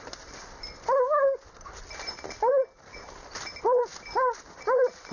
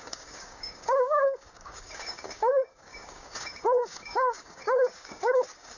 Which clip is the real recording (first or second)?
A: first